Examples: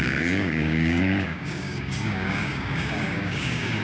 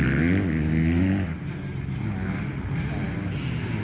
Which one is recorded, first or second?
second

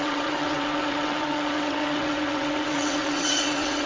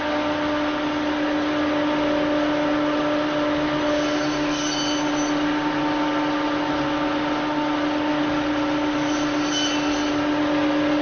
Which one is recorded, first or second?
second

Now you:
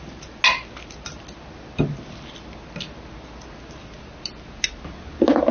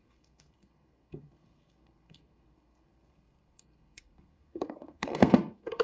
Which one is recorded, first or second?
first